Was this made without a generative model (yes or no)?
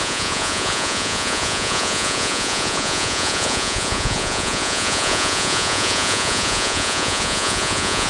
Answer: no